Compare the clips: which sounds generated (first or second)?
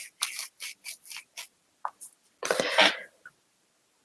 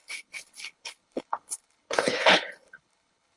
second